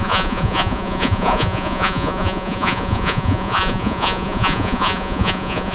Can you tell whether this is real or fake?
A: fake